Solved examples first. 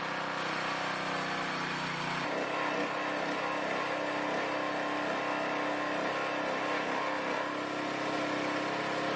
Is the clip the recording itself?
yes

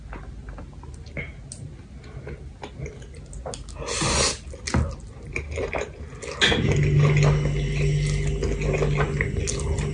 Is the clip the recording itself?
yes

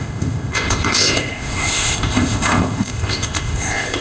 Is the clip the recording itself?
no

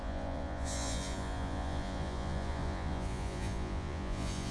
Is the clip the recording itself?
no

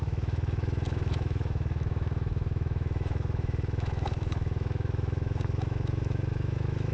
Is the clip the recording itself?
no